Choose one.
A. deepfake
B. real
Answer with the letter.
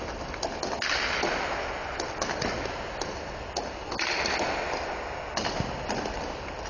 B